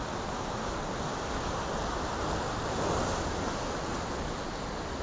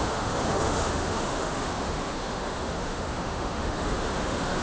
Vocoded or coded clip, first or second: second